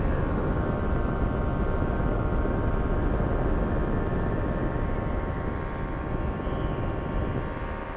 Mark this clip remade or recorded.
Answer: recorded